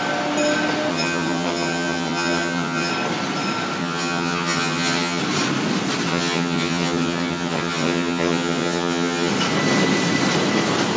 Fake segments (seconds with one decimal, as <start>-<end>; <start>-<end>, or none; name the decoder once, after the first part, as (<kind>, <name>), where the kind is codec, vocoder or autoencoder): 0.9-2.9 (vocoder, HiFi-GAN); 3.8-5.2; 6.1-9.3

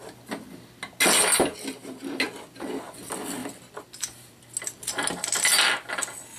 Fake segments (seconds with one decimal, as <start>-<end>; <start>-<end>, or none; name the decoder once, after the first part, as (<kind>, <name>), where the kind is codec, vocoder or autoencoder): none

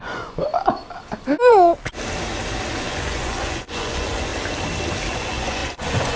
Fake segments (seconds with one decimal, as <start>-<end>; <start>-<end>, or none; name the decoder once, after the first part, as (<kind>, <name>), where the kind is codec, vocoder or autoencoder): 0.0-0.5 (vocoder, Vocos); 2.7-4.3; 5.1-6.2

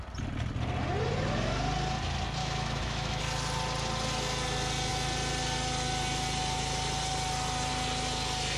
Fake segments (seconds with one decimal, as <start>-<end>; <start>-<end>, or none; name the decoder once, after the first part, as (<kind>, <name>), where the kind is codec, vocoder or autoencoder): 2.4-3.2 (autoencoder, DAC-VAE)

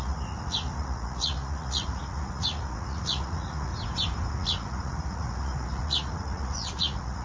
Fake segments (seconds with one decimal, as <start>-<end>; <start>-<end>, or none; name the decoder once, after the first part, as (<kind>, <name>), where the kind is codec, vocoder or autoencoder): 0.0-3.7 (vocoder, Vocos); 4.3-7.2

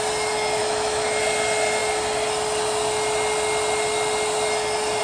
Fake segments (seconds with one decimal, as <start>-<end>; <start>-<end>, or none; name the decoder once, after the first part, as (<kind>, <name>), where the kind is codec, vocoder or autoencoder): 0.6-1.2 (autoencoder, DAC-VAE)